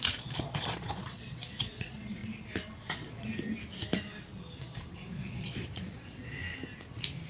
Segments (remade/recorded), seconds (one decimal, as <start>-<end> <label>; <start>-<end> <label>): 0.0-2.2 remade; 2.2-2.8 recorded; 2.8-3.3 remade; 3.3-4.6 recorded; 4.6-6.4 remade; 6.4-7.3 recorded